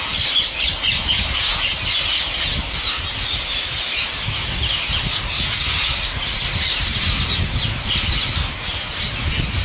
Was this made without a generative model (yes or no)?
yes